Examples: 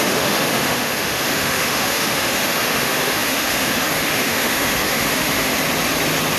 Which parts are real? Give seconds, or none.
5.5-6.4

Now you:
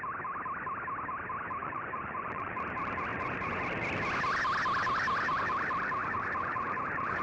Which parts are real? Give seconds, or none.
0.0-1.6; 2.6-3.1; 3.6-6.0